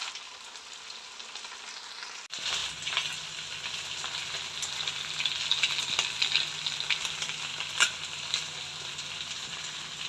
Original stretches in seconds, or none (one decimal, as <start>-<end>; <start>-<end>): 0.0-10.1